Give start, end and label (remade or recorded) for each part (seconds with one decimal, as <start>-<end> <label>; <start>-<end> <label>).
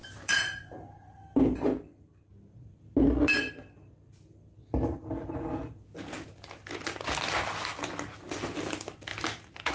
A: 0.0-0.6 remade; 0.6-9.1 recorded; 9.1-9.7 remade